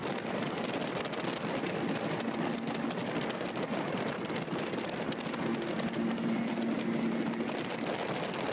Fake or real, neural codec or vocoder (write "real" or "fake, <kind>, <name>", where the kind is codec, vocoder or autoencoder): real